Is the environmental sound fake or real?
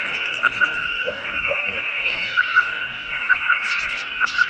fake